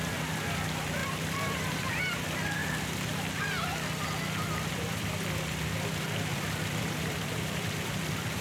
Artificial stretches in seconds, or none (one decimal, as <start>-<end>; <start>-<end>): 0.0-2.6; 4.7-8.4